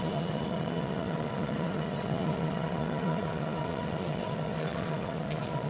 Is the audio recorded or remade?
remade